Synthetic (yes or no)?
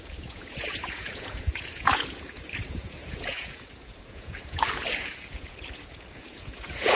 yes